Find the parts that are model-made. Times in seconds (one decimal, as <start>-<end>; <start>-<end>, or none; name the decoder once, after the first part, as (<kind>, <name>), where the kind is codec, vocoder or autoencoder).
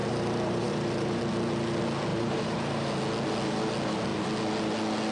0.0-1.2 (vocoder, BigVGAN v2); 2.1-2.9